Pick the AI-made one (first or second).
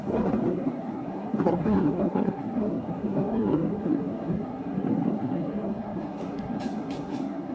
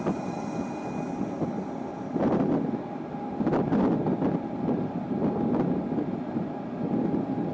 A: first